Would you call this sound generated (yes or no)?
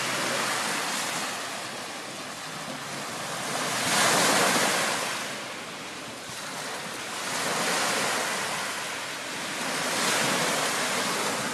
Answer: no